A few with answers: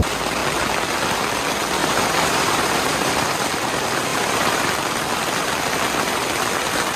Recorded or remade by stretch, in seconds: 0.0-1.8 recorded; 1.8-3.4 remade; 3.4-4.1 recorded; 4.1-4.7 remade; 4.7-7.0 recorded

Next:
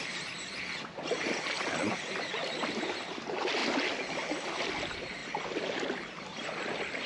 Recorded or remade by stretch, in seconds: 0.0-3.6 remade; 3.6-4.6 recorded; 4.6-5.2 remade; 5.2-6.2 recorded; 6.2-7.1 remade

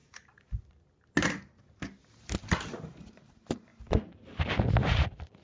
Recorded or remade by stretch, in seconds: 0.0-0.6 remade; 0.6-2.4 recorded; 2.4-3.3 remade; 3.3-3.7 recorded; 3.7-4.4 remade; 4.4-5.4 recorded

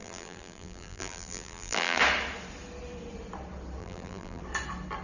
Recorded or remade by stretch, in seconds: 0.0-2.0 remade; 2.0-3.8 recorded; 3.8-4.4 remade; 4.4-5.0 recorded

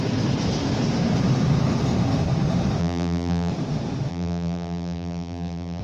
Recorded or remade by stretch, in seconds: 0.0-2.8 recorded; 2.8-3.5 remade; 3.5-4.1 recorded; 4.1-5.8 remade

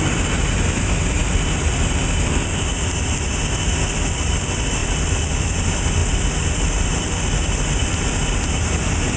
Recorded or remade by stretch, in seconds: 0.0-1.2 recorded; 1.2-2.7 remade; 2.7-4.8 recorded; 4.8-5.3 remade; 5.3-9.2 recorded

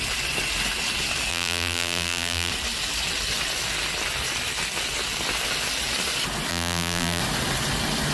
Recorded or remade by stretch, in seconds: 0.0-1.3 recorded; 1.3-2.5 remade; 2.5-6.5 recorded; 6.5-7.2 remade; 7.2-8.1 recorded